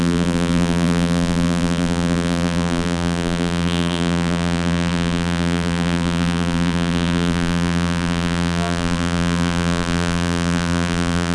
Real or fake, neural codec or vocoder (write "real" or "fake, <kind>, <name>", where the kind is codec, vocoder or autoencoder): fake, vocoder, BigVGAN v2